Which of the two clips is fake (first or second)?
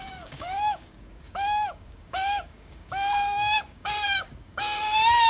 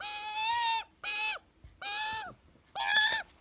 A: first